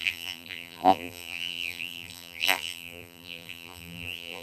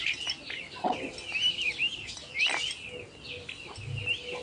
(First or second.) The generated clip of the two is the first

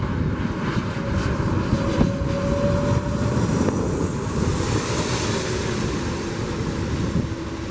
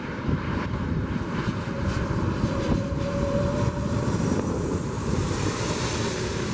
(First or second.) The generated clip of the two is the second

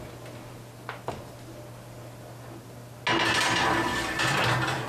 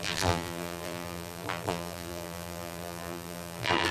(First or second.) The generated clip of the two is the second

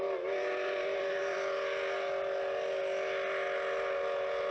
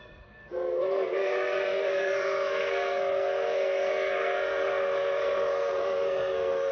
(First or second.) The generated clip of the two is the second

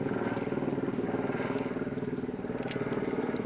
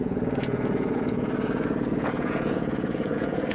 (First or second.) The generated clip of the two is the second